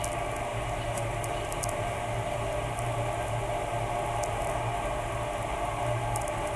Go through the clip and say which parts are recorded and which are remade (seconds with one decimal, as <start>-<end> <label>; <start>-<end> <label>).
0.0-6.6 recorded